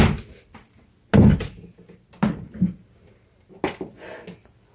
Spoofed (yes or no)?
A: no